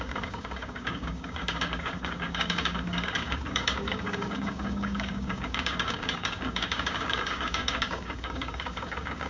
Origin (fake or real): fake